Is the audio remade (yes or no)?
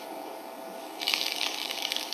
yes